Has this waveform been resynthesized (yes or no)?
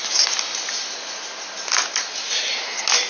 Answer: no